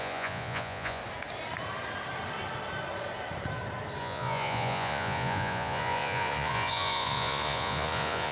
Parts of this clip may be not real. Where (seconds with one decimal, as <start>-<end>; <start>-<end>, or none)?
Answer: 0.0-1.0; 4.0-8.3